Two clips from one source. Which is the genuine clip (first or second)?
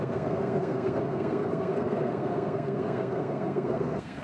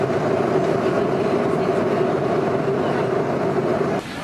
second